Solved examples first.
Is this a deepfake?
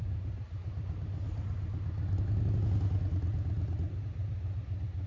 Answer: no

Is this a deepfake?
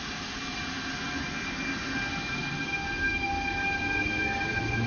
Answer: no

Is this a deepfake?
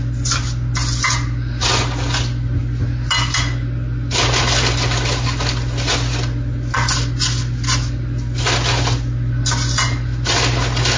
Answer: no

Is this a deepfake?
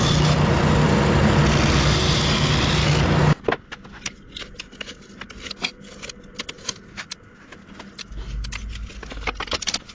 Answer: no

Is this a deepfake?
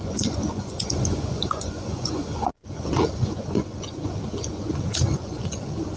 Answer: yes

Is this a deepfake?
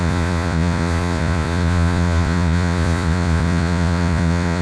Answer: yes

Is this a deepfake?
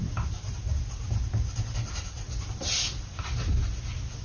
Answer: no